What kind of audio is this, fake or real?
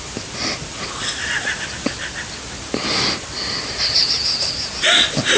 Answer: real